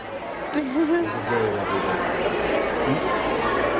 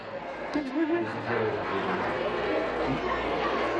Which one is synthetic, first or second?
second